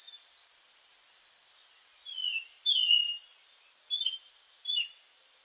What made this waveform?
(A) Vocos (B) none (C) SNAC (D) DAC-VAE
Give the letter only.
B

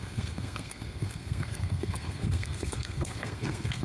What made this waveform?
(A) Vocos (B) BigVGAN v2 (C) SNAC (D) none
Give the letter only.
C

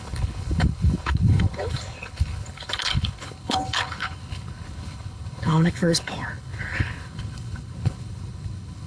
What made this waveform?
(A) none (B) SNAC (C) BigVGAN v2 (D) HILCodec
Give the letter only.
D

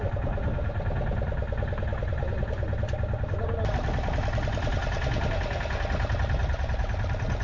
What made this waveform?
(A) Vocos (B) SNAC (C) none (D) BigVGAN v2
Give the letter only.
C